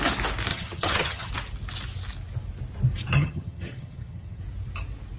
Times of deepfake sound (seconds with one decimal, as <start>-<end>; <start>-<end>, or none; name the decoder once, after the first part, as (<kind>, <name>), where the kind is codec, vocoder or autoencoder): 0.5-1.3 (vocoder, HiFi-GAN); 3.1-4.4

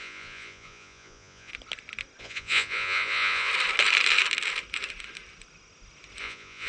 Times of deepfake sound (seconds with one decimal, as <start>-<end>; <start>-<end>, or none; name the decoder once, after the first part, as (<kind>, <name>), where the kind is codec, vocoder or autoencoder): 0.0-1.5 (vocoder, Vocos); 2.2-3.5; 6.2-6.7

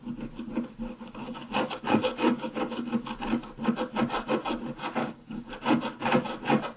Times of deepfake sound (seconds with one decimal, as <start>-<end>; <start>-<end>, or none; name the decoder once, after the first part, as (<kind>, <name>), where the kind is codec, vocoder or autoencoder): 1.2-2.9 (codec, DAC); 5.0-5.5

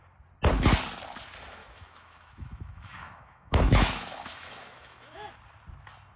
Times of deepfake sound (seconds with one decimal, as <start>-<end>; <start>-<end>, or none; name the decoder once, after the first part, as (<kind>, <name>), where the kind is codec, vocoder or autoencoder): 1.6-5.3 (autoencoder, DAC-VAE)

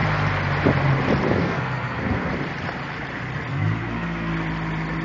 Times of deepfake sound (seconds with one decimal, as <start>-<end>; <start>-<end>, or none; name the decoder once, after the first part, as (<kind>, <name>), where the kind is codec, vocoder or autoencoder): 1.4-2.3 (codec, SNAC); 3.5-4.3

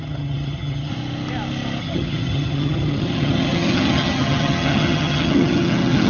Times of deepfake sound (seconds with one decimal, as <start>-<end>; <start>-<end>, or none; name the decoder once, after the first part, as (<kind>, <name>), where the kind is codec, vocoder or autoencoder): 0.0-0.9 (vocoder, HiFi-GAN); 1.8-6.1

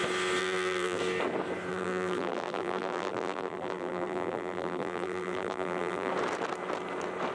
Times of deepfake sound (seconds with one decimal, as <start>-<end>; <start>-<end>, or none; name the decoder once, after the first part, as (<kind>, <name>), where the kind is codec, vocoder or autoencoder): 0.4-1.0 (vocoder, BigVGAN v2); 1.7-6.1